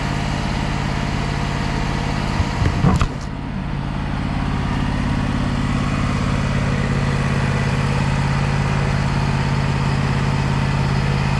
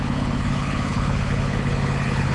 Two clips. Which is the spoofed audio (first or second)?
second